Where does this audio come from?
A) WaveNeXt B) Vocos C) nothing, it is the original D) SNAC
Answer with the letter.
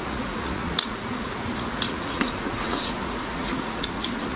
B